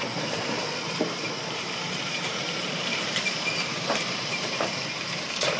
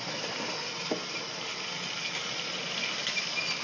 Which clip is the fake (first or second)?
first